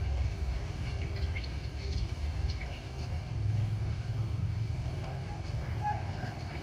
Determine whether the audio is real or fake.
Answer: fake